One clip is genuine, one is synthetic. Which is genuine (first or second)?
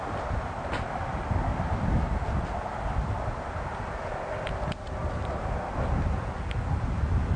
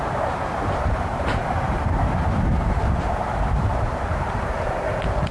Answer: first